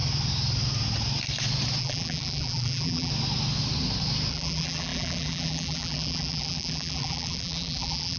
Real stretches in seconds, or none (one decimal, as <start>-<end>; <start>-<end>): 0.0-1.8; 3.1-4.3